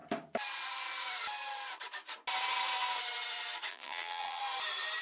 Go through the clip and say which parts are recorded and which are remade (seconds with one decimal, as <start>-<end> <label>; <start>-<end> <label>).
0.0-3.7 recorded; 3.7-4.4 remade; 4.4-5.0 recorded